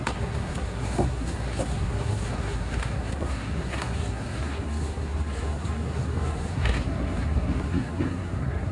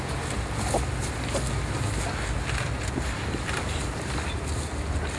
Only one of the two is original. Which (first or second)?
second